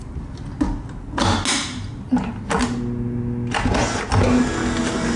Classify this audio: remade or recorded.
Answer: recorded